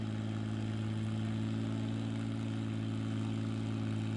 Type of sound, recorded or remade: recorded